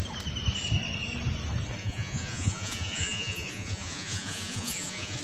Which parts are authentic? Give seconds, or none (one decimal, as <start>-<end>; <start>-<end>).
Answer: 0.0-1.8